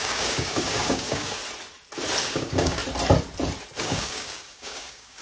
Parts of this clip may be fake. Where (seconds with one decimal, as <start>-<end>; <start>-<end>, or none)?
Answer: 0.0-1.4; 2.2-2.8; 3.8-5.2